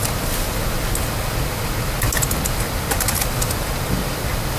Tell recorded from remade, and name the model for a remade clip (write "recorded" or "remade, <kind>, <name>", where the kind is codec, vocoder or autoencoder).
recorded